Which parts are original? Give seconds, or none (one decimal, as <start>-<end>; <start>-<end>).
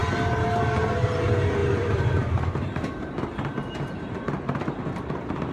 0.0-0.5